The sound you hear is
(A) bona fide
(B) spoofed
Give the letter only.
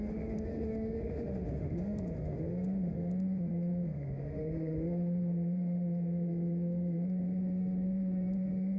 B